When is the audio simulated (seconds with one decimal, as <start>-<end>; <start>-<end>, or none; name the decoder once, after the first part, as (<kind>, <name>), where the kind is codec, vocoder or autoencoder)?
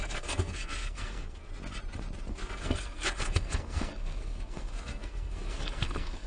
0.0-1.5 (codec, SNAC); 2.3-6.3